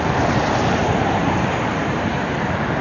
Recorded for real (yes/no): no